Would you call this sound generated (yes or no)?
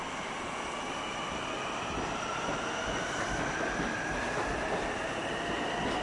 no